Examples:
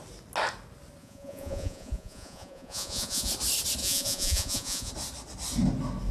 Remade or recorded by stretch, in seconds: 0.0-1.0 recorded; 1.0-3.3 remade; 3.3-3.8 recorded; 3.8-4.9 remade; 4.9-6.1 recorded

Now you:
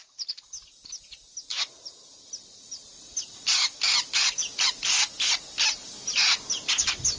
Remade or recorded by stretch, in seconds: 0.0-1.5 recorded; 1.5-2.3 remade; 2.3-7.2 recorded

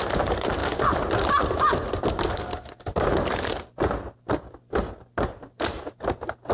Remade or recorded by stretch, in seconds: 0.0-6.5 recorded